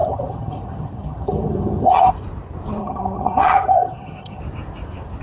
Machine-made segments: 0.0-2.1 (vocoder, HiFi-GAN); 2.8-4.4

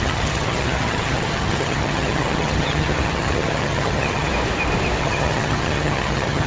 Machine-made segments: 0.0-4.3 (vocoder, HiFi-GAN); 5.0-6.5